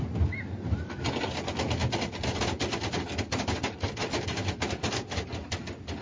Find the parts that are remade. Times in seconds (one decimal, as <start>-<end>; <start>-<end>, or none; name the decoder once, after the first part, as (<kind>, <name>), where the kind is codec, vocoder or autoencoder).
1.8-4.9 (vocoder, BigVGAN v2)